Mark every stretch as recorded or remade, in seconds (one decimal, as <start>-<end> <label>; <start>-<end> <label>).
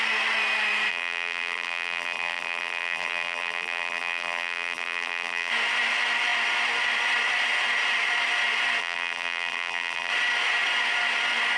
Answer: 0.0-0.9 recorded; 0.9-5.5 remade; 5.5-8.8 recorded; 8.8-10.1 remade; 10.1-11.6 recorded